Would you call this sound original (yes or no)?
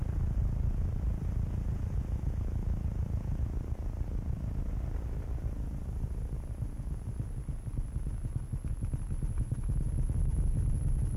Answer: yes